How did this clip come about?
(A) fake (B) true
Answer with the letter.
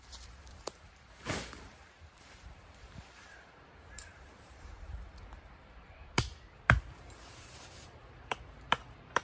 A